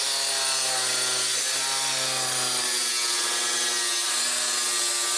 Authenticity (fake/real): real